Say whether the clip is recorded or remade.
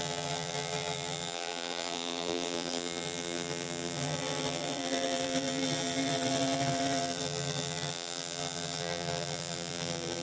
remade